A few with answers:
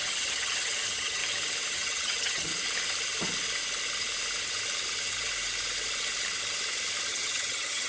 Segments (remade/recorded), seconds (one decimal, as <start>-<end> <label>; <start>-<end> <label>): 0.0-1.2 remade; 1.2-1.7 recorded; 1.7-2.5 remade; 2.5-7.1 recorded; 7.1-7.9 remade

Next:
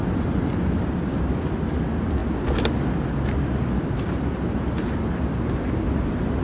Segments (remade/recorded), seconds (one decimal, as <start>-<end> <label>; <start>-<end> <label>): 0.0-6.4 recorded

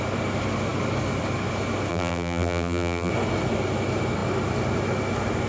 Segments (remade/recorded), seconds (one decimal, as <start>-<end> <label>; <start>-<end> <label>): 0.0-1.9 recorded; 1.9-3.1 remade; 3.1-5.5 recorded

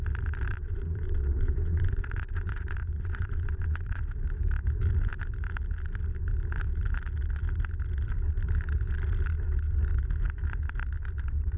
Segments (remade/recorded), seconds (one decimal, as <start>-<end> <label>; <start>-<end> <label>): 0.0-0.5 recorded; 0.5-4.0 remade; 4.0-11.6 recorded

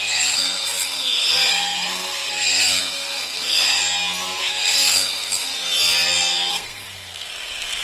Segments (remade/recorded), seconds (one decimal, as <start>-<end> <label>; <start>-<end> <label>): 0.0-3.8 remade; 3.8-4.4 recorded; 4.4-5.5 remade; 5.5-6.5 recorded; 6.5-7.8 remade

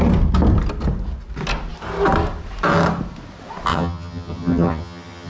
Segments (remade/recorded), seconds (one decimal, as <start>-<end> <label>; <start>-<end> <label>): 0.0-3.7 recorded; 3.7-5.3 remade

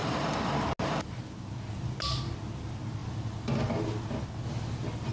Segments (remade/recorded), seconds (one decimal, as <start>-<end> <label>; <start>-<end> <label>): 0.0-0.7 remade; 0.7-3.0 recorded; 3.0-3.8 remade; 3.8-5.1 recorded

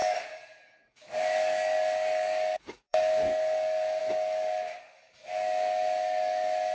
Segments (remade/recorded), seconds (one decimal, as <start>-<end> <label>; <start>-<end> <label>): 0.0-6.7 remade